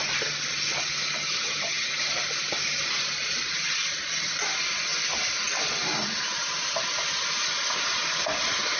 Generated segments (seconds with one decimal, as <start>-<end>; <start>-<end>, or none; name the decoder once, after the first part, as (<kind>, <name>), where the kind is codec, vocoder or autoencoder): 1.2-1.9 (vocoder, HiFi-GAN)